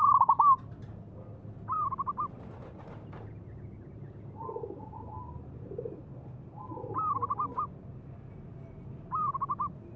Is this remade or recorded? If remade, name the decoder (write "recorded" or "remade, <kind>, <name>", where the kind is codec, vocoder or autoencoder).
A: recorded